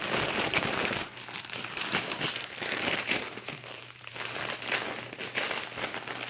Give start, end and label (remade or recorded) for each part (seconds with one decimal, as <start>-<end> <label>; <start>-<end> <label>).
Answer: 0.0-4.1 remade; 4.1-6.3 recorded

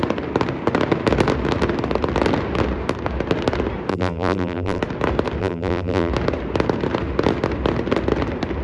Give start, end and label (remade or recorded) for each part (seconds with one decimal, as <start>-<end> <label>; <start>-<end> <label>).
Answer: 0.0-3.9 recorded; 3.9-4.8 remade; 4.8-5.4 recorded; 5.4-6.1 remade; 6.1-8.6 recorded

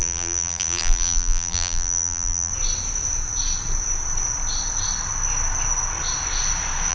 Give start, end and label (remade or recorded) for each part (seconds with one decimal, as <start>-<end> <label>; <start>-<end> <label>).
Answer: 0.0-2.5 remade; 2.5-6.9 recorded